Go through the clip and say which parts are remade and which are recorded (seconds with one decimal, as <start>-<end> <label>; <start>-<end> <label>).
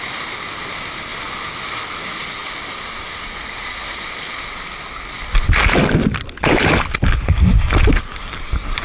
0.0-8.8 recorded